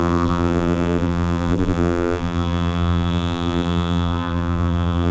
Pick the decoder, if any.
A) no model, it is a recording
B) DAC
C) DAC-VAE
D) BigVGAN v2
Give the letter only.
D